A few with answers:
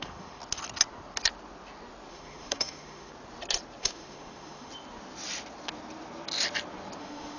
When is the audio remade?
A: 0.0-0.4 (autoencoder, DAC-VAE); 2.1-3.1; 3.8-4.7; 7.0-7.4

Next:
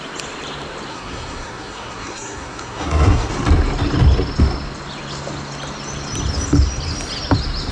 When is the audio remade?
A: 0.9-3.3 (codec, SNAC)

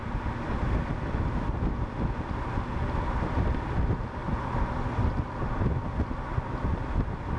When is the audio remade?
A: none

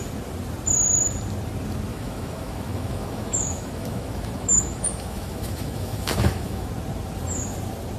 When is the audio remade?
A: 1.9-6.7 (autoencoder, DAC-VAE)

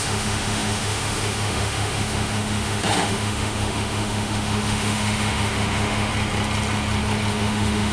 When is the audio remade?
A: 0.0-6.1 (autoencoder, DAC-VAE); 7.3-7.9

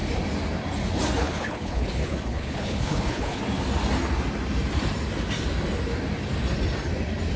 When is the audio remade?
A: 1.2-3.4 (codec, HILCodec)

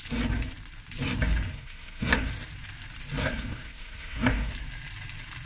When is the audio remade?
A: 1.5-2.3 (codec, SNAC); 3.2-4.5